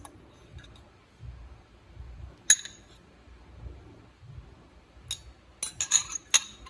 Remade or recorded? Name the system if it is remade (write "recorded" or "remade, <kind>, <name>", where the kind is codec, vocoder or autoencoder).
recorded